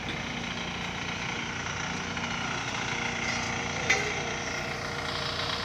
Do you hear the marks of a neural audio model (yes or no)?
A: no